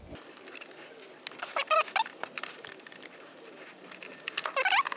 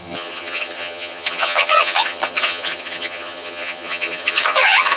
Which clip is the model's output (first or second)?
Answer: second